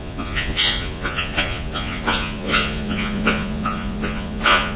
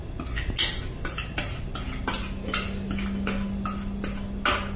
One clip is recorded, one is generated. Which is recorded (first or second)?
second